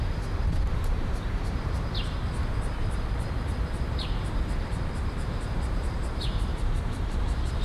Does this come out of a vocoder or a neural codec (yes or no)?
yes